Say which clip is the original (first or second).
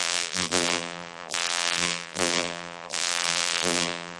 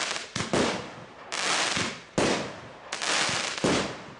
second